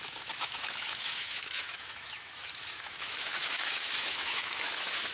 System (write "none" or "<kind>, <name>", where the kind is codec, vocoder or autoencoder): autoencoder, DAC-VAE